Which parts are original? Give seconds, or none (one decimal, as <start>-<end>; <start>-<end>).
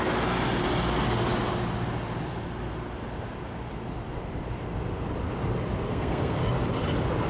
0.0-5.9; 6.4-7.3